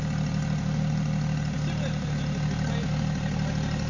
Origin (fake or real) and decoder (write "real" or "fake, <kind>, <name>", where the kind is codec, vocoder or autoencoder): real